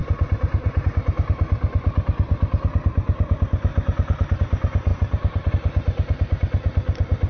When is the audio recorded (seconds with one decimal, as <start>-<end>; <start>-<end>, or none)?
0.8-4.9; 5.5-7.3